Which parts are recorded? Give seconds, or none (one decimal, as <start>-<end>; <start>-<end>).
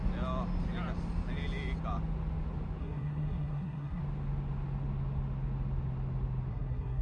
0.0-2.8; 4.0-6.5